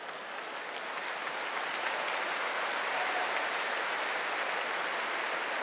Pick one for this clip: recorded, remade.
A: recorded